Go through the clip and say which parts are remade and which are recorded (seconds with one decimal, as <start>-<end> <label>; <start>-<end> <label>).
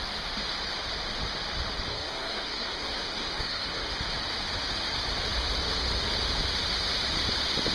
0.0-1.9 recorded; 1.9-3.9 remade; 3.9-7.7 recorded